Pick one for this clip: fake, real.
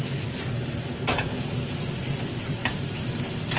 real